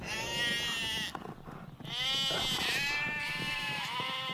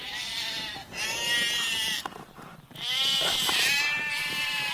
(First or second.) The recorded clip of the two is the first